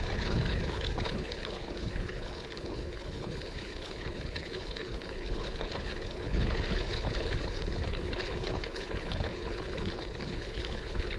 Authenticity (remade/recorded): remade